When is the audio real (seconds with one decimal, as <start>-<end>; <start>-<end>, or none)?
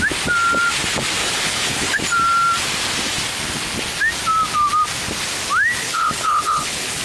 0.0-1.2; 2.0-5.8